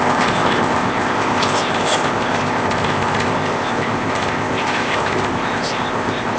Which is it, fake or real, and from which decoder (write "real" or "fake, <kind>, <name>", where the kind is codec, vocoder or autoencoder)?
fake, codec, ZipCodec